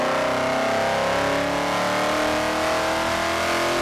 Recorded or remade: recorded